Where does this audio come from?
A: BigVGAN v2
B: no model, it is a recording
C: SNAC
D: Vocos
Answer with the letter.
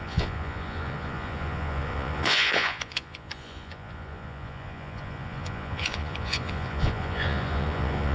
D